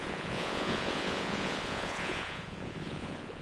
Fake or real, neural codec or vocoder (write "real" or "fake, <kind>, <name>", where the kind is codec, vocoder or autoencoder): fake, vocoder, Vocos